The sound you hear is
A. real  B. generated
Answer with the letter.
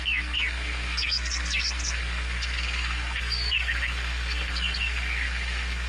B